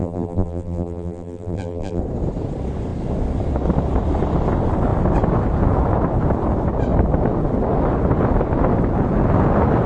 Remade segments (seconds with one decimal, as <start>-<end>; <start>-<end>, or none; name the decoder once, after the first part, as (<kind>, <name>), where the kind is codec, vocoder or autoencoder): 0.0-2.0 (vocoder, BigVGAN v2)